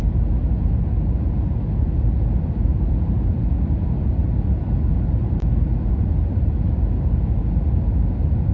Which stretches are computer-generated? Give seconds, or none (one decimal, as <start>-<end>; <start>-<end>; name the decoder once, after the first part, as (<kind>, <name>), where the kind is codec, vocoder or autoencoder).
none